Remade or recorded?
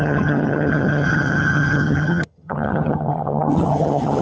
remade